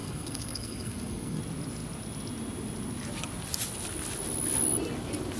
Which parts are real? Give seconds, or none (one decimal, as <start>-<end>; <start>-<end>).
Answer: 1.4-5.4